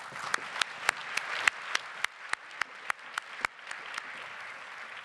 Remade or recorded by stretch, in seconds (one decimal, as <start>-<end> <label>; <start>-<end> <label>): 0.0-5.0 recorded